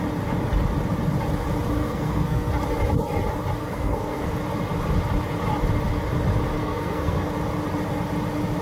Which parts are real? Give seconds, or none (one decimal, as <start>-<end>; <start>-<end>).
0.0-1.8; 2.5-3.6; 4.3-6.6; 7.3-8.6